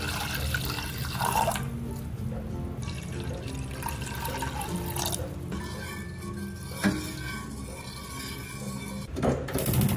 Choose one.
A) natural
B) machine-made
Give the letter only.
A